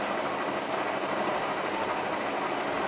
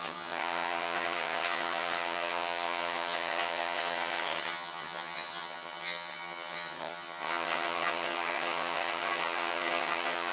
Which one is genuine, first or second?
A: first